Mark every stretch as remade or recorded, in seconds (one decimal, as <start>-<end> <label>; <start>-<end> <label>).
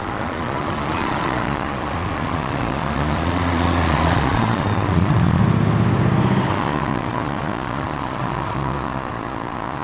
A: 0.0-5.4 remade; 5.4-6.5 recorded; 6.5-9.8 remade